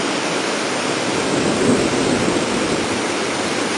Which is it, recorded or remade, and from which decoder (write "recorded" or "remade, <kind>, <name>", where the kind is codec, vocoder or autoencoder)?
recorded